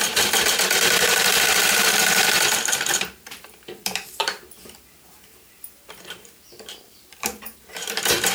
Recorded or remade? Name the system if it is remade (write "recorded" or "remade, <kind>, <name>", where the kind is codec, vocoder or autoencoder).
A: remade, vocoder, BigVGAN v2